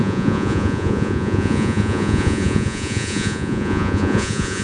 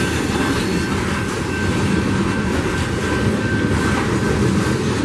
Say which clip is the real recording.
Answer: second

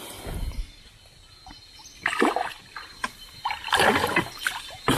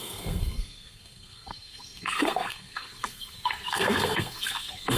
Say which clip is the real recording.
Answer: first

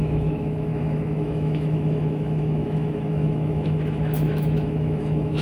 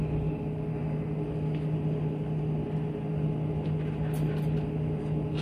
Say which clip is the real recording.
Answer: second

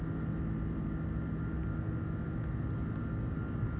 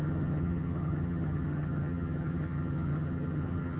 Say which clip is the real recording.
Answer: first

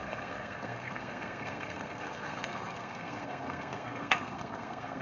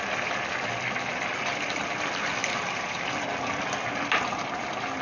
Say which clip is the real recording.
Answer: second